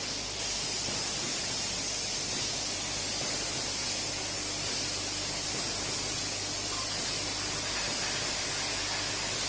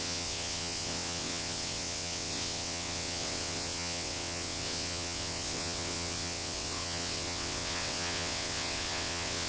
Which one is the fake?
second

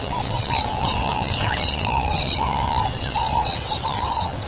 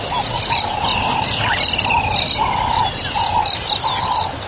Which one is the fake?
first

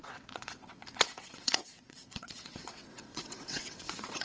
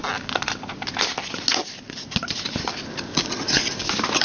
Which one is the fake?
first